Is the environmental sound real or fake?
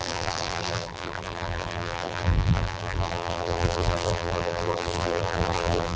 fake